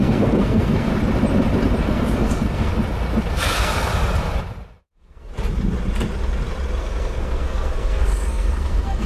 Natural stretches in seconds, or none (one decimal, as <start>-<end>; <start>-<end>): 0.9-1.8; 2.7-3.3; 3.9-4.8; 5.3-6.8